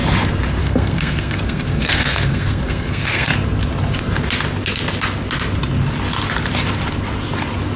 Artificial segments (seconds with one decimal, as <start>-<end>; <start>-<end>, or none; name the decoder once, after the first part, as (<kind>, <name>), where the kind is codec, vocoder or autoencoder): 0.6-3.3 (codec, SNAC)